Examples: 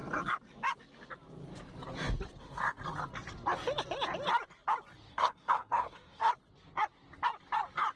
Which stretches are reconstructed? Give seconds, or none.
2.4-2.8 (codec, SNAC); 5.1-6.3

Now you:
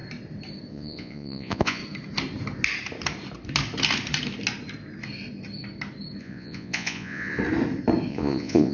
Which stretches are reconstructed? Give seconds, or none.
0.7-1.8 (vocoder, Vocos); 6.2-7.4; 8.1-8.7

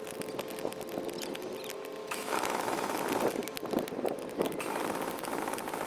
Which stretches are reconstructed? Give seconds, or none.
2.0-3.0 (autoencoder, DAC-VAE)

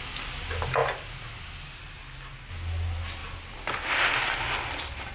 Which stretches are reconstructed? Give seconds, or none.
none

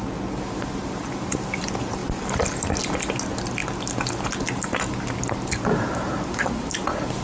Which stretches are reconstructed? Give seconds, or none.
none

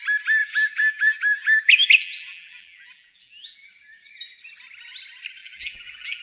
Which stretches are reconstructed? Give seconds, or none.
0.4-3.7 (vocoder, BigVGAN v2); 5.4-6.2